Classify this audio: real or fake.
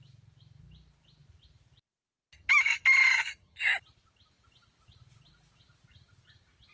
real